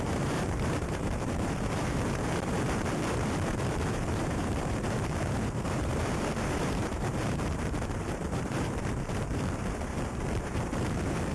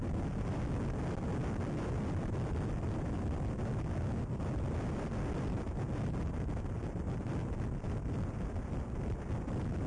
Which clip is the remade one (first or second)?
first